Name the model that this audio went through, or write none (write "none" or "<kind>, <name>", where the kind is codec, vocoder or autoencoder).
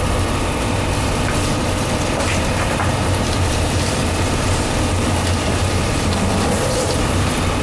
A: vocoder, BigVGAN v2